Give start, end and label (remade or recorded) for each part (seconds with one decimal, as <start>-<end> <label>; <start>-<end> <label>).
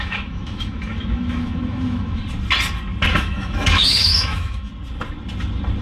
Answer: 0.0-2.2 remade; 2.2-3.1 recorded; 3.1-4.7 remade; 4.7-5.8 recorded